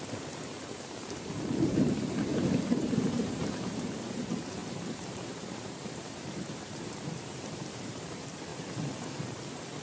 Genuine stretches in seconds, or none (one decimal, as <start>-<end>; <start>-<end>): none